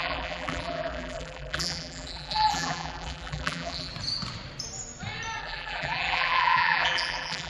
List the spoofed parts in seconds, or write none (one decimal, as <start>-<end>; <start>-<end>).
0.0-3.9; 5.4-7.5